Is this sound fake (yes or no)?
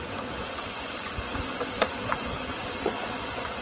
yes